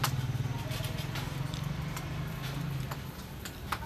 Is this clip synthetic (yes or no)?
no